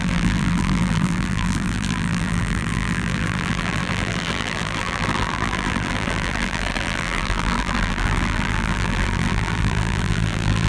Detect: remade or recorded remade